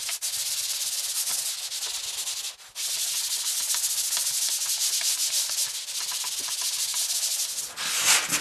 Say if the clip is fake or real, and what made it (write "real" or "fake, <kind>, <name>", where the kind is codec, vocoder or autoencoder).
real